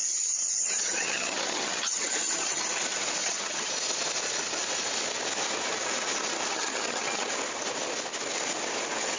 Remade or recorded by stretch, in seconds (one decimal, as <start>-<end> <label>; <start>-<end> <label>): 0.0-2.6 remade; 2.6-3.2 recorded; 3.2-3.7 remade; 3.7-6.5 recorded; 6.5-7.3 remade; 7.3-9.2 recorded